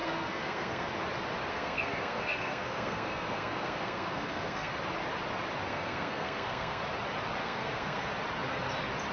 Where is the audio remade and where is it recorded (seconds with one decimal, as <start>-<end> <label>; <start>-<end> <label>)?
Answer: 0.0-0.9 remade; 0.9-1.5 recorded; 1.5-4.7 remade; 4.7-5.7 recorded; 5.7-6.8 remade; 6.8-7.4 recorded; 7.4-8.1 remade; 8.1-9.1 recorded